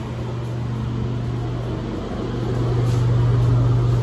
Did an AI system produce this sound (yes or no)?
no